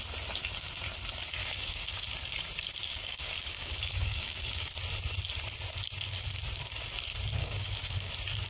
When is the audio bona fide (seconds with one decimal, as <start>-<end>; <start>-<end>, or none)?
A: 0.0-1.4; 2.0-2.9; 4.7-7.4; 8.1-8.5